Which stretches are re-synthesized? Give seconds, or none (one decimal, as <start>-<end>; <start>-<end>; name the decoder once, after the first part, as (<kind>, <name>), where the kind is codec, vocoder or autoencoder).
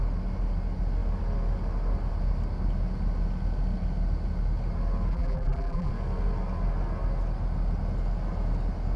5.1-5.9 (vocoder, BigVGAN v2)